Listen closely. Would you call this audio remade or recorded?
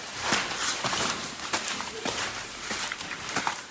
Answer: remade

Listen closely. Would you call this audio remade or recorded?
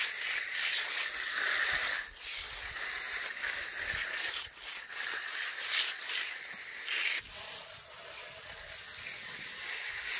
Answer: recorded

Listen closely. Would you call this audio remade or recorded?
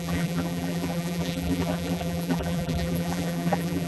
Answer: remade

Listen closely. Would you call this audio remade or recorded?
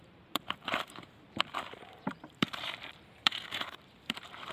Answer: remade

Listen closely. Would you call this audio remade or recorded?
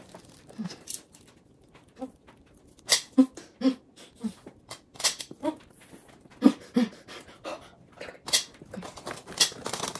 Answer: recorded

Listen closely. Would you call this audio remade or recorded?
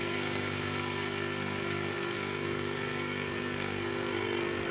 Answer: remade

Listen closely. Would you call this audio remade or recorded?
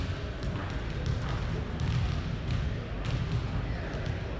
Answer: recorded